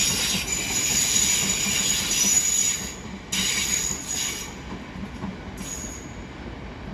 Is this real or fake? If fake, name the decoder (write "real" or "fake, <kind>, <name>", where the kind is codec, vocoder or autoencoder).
real